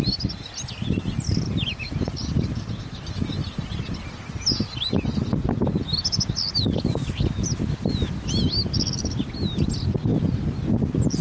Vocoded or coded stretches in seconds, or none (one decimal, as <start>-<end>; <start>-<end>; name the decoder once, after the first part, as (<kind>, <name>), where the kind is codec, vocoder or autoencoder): none